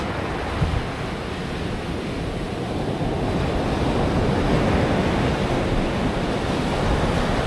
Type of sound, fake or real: real